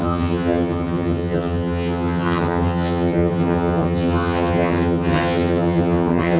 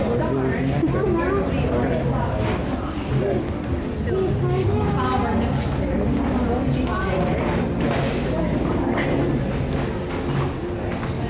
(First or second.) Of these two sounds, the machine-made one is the first